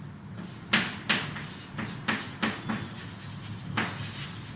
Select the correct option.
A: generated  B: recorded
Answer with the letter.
B